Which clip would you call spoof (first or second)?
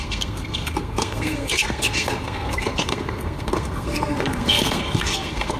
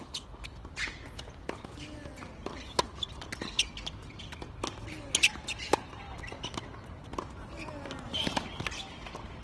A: first